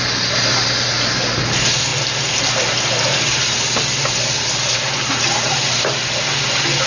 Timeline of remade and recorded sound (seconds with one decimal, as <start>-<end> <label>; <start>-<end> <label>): 0.0-6.9 recorded